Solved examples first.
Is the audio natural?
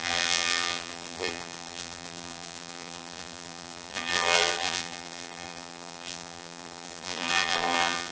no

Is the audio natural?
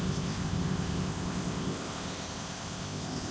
no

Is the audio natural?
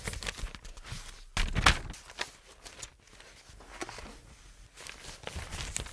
yes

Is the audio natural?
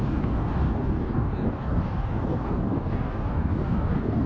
no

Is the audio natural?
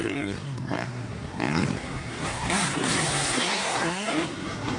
no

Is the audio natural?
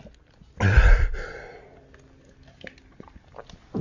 yes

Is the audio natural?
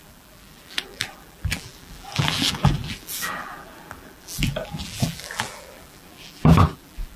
no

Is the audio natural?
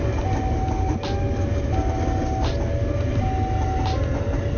yes